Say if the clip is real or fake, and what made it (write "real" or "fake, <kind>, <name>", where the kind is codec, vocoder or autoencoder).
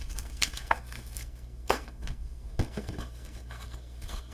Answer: fake, codec, SNAC